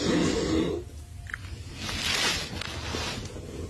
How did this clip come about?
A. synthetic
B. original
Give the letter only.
B